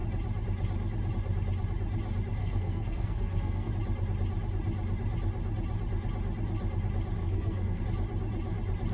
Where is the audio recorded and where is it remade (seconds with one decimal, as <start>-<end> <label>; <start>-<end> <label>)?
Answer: 0.0-2.4 recorded; 2.4-3.7 remade; 3.7-7.2 recorded; 7.2-7.8 remade; 7.8-8.9 recorded